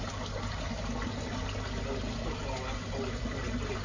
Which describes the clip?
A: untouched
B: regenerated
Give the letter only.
A